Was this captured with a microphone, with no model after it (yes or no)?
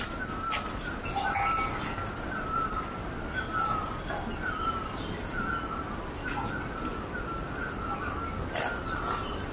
yes